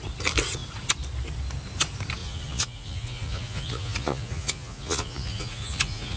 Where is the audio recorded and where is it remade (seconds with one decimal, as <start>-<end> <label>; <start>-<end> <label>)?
0.0-2.2 recorded; 2.2-6.2 remade